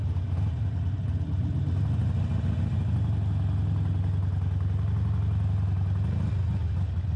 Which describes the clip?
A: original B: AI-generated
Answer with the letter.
A